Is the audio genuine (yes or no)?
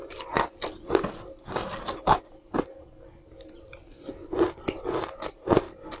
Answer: yes